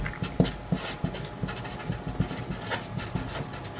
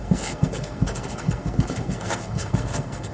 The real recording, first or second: first